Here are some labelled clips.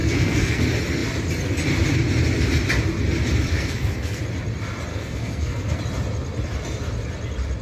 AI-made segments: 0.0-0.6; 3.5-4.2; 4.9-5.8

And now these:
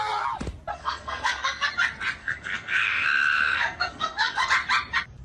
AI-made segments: 0.7-1.7; 2.2-4.5

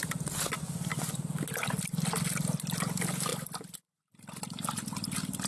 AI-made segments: none

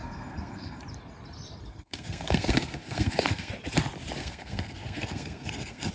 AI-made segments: 0.0-0.8; 1.7-3.5; 4.2-5.9